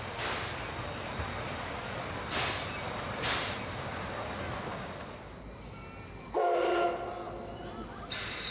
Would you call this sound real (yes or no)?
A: yes